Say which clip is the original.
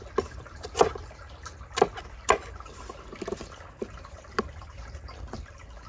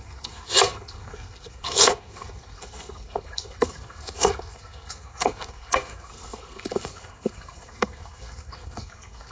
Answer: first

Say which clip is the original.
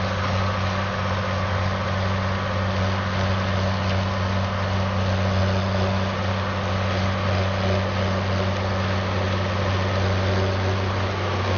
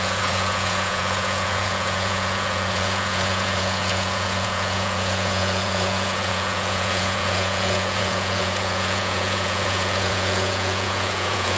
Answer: first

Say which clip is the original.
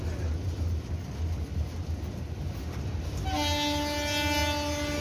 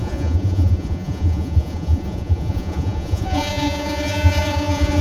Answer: first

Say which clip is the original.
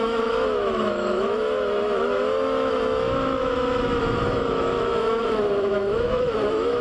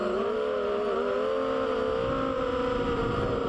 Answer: second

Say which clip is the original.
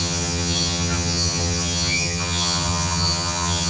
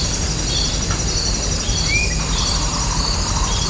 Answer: second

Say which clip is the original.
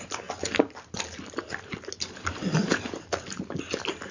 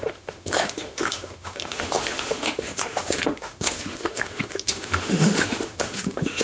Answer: first